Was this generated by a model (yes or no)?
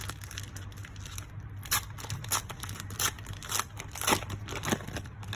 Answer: no